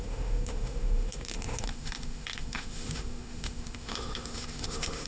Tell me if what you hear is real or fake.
fake